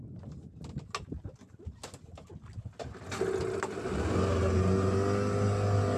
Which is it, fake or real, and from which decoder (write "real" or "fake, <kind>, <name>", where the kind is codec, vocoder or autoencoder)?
real